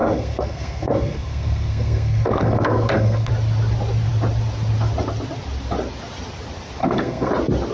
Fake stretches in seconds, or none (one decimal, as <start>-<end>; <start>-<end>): 0.0-3.3; 6.8-7.3